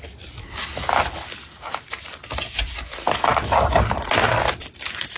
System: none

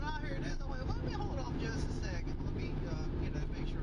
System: none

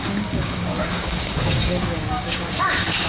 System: codec, DAC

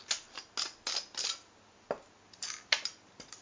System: none